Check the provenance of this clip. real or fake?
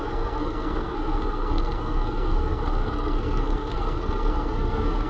fake